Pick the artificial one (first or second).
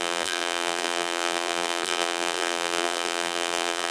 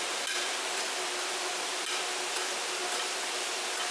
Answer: first